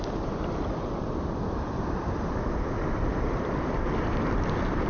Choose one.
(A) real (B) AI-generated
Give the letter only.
B